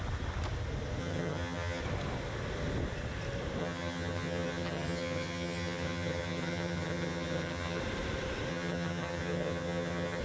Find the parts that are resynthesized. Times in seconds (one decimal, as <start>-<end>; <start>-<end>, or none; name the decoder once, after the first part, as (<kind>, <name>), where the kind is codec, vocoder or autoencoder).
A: 1.0-1.8 (vocoder, HiFi-GAN); 3.6-7.8; 8.5-10.2